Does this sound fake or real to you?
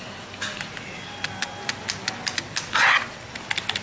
real